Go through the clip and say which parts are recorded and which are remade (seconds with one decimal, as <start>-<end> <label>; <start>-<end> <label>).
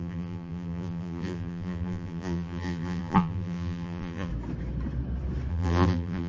0.0-4.3 remade; 4.3-5.5 recorded; 5.5-6.3 remade